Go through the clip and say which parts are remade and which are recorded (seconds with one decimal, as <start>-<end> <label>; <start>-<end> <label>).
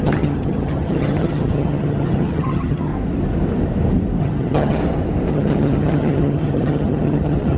0.0-2.9 remade; 2.9-4.2 recorded; 4.2-4.8 remade; 4.8-5.3 recorded; 5.3-7.6 remade